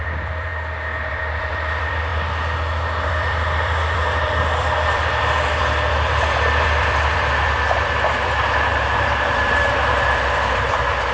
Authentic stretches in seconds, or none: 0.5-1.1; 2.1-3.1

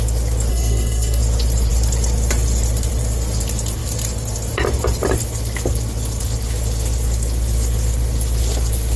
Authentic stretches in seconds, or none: 0.0-0.5; 1.2-9.0

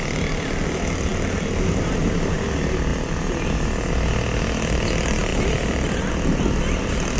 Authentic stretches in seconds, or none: 0.0-5.3; 6.1-7.2

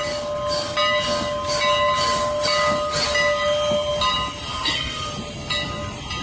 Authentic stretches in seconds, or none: 0.0-4.5; 5.1-6.2